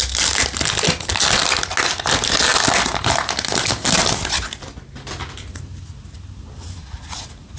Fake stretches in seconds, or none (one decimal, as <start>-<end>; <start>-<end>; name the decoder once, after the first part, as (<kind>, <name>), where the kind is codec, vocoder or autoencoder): none